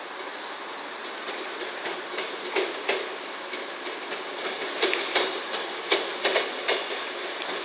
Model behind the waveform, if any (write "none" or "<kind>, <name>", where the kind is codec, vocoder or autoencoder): none